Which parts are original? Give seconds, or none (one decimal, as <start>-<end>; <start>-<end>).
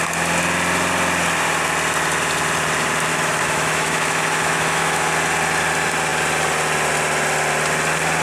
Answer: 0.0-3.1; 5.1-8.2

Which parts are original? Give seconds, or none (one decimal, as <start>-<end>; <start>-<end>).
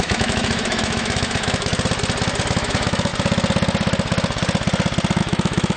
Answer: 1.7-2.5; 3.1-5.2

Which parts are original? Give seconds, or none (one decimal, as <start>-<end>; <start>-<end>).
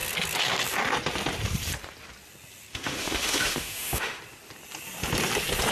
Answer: 0.0-2.7; 4.2-5.7